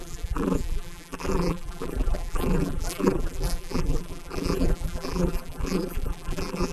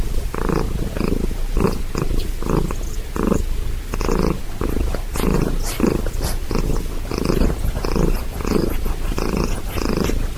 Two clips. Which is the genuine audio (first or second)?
second